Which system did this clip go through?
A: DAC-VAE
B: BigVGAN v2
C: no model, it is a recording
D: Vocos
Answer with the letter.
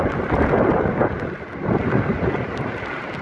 C